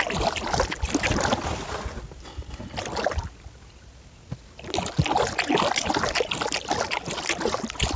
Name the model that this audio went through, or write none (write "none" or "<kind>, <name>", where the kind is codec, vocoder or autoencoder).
none